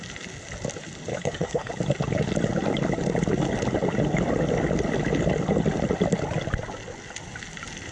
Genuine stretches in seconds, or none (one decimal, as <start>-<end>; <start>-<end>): 0.0-1.1; 1.7-7.9